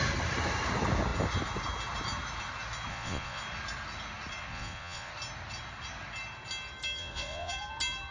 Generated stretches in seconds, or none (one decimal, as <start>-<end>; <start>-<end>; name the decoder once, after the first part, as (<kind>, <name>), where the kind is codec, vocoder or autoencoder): 2.9-3.4 (vocoder, Vocos); 4.5-5.1; 7.0-7.5